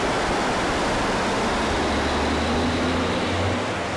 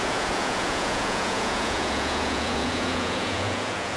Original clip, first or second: first